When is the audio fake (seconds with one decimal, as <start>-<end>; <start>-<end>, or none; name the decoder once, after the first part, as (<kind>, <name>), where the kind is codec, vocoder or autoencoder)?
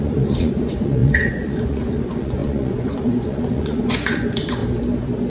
0.0-4.6 (vocoder, Vocos)